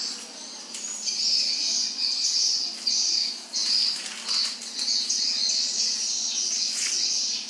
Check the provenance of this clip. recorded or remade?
recorded